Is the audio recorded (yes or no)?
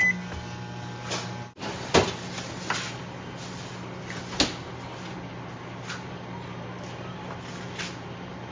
yes